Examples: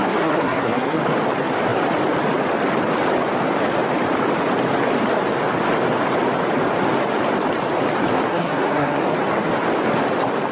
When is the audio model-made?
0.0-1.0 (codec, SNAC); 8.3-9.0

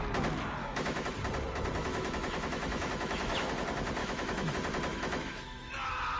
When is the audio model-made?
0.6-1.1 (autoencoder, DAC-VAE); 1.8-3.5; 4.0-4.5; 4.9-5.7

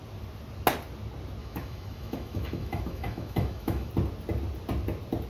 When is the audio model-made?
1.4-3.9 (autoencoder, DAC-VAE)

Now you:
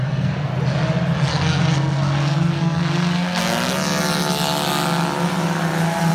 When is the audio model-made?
0.0-0.5 (codec, SNAC); 1.3-3.4

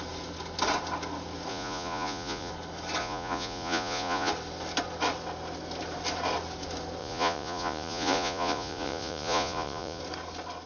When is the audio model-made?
1.5-2.5 (vocoder, Vocos); 3.0-4.3; 7.0-10.0

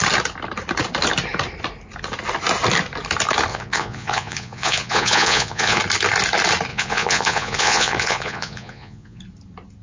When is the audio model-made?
3.5-5.8 (vocoder, Vocos); 6.7-9.2

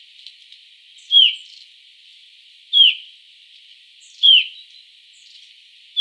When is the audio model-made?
2.1-5.4 (vocoder, BigVGAN v2)

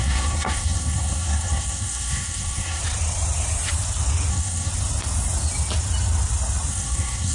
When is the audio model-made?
0.0-2.8 (codec, SNAC); 4.3-4.7; 6.7-7.3